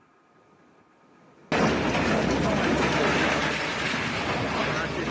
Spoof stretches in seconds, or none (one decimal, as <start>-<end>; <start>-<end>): none